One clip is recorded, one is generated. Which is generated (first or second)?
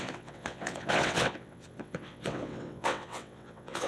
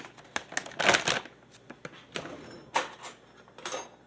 first